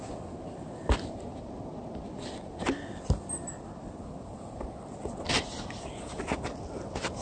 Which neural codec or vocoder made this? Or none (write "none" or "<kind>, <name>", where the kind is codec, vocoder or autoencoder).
none